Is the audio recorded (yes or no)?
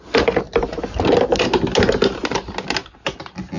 yes